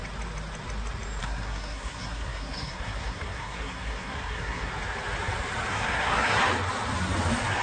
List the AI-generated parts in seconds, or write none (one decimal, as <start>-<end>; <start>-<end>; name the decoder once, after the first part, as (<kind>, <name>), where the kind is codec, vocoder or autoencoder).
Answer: 1.2-4.7 (codec, SNAC); 5.7-6.4